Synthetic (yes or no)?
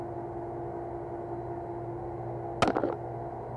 no